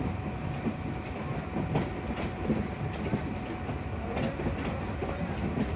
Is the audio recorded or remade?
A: recorded